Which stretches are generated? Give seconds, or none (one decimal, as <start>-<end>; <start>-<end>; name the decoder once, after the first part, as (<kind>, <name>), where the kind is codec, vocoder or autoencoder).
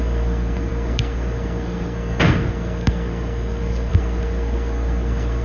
0.0-5.4 (codec, SNAC)